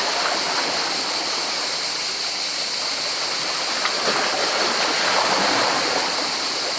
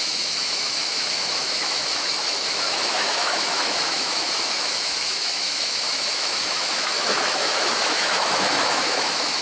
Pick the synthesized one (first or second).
second